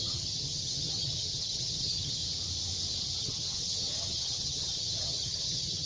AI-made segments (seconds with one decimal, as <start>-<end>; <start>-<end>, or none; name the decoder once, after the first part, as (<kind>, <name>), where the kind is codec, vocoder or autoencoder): 0.0-2.2 (vocoder, HiFi-GAN); 3.2-5.9